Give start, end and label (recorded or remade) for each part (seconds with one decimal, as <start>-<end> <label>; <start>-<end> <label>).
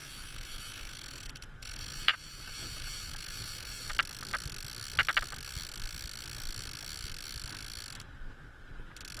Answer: 0.0-3.9 remade; 3.9-9.2 recorded